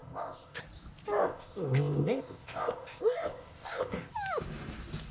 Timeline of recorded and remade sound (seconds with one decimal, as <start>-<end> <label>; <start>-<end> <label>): 0.0-0.6 remade; 0.6-1.2 recorded; 1.2-4.1 remade; 4.1-5.1 recorded